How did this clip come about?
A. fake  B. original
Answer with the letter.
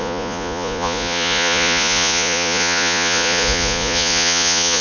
A